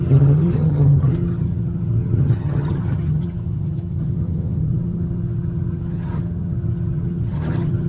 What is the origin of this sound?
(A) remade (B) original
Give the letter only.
A